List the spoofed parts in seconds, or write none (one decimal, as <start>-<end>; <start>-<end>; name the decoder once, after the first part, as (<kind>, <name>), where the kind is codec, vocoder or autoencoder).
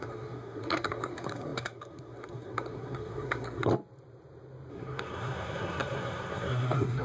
0.0-3.7 (codec, SNAC); 4.7-7.0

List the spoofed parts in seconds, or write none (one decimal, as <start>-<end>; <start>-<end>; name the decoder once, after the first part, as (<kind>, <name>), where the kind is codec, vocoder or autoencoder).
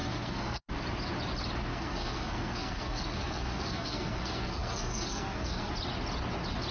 0.0-0.7 (codec, SNAC); 1.7-5.7